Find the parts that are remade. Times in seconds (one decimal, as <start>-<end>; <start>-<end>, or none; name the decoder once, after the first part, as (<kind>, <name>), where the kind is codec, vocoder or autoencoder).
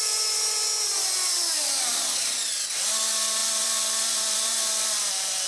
1.9-2.8 (vocoder, BigVGAN v2); 3.4-5.1